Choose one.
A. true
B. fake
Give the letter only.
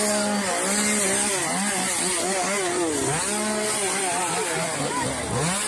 A